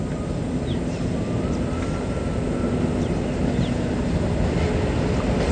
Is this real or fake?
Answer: real